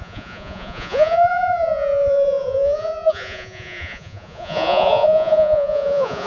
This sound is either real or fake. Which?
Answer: fake